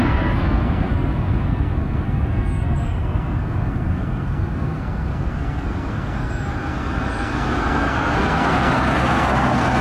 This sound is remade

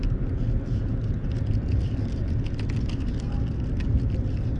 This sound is recorded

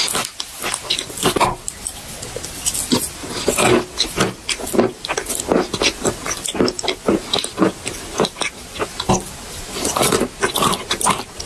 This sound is recorded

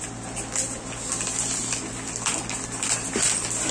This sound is recorded